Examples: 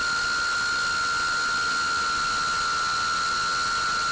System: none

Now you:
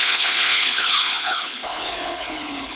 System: codec, HILCodec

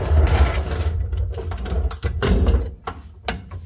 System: none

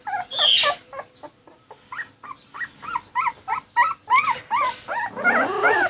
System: none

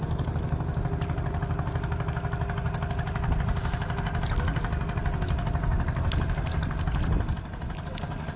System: none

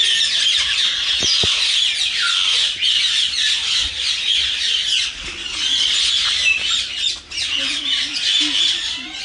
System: none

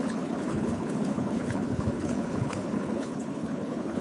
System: codec, HILCodec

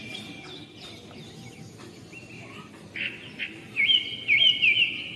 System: none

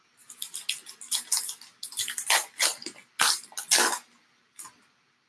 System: none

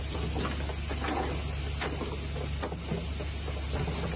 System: none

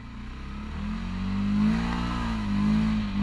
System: none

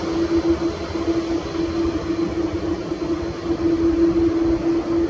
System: none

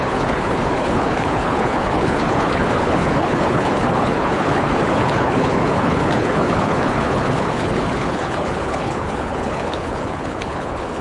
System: codec, HILCodec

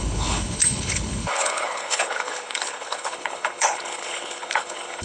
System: codec, HILCodec